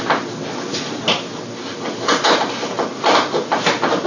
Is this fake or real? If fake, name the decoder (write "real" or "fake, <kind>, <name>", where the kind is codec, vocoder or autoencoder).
real